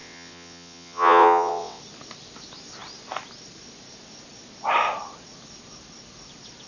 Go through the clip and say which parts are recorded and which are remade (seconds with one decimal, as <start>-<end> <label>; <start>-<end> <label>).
0.0-1.8 remade; 1.8-6.7 recorded